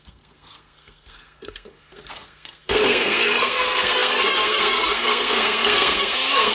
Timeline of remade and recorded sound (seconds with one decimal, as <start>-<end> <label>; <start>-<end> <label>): 0.0-6.5 remade